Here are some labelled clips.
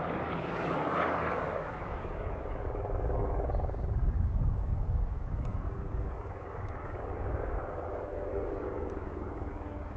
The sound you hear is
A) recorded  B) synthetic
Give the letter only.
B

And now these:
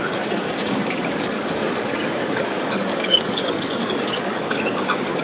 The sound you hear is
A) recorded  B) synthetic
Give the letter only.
B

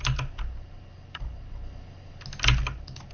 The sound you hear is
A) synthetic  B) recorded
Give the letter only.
B